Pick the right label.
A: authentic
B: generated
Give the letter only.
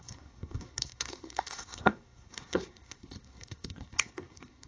B